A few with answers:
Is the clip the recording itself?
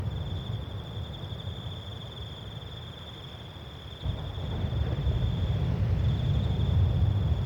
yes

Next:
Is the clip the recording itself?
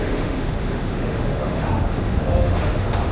no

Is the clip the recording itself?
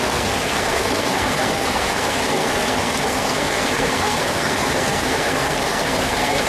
no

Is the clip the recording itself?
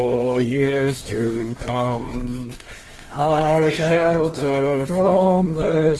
no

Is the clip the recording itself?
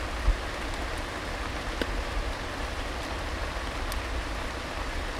yes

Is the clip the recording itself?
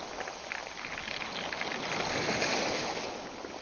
yes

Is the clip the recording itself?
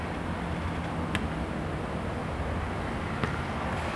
yes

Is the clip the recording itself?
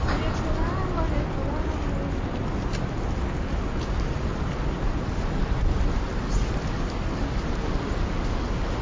yes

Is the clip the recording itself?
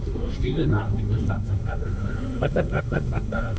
no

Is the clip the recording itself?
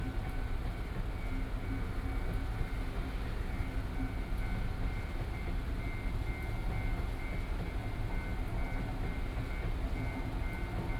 yes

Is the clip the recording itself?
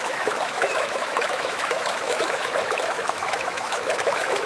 no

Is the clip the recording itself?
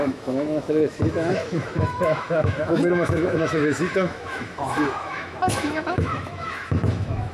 no